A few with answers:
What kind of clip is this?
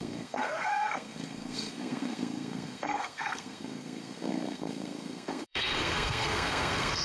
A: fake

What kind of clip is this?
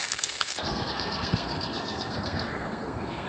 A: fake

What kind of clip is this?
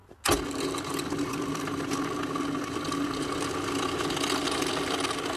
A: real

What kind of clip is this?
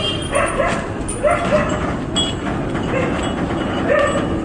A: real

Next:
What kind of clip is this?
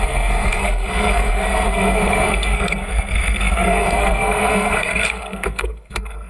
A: fake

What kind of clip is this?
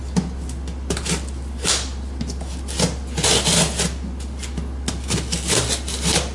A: real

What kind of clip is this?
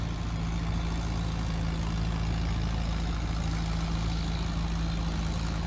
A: real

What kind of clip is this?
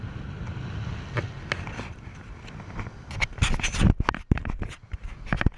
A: real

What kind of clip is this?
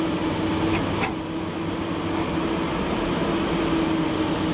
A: real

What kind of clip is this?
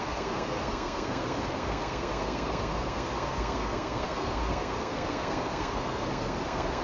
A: fake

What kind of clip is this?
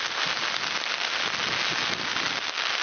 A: real